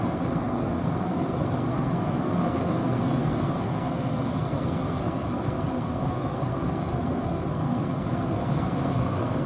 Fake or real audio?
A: fake